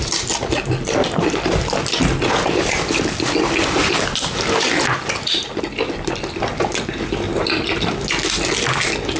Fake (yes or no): no